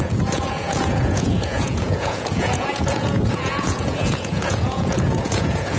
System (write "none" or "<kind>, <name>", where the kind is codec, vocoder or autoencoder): vocoder, Vocos